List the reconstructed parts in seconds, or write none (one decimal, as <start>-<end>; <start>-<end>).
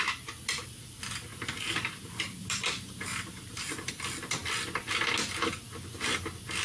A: 1.3-3.9